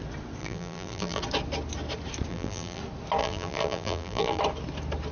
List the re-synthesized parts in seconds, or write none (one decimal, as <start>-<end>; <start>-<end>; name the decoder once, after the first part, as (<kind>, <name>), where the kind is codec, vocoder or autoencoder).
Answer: 0.4-1.2 (vocoder, BigVGAN v2); 2.3-2.8; 3.2-4.4